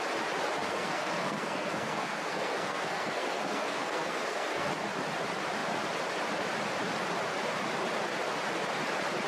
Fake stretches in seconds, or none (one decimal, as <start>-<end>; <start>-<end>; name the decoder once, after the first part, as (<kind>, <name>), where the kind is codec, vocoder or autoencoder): 0.6-4.7 (codec, SNAC)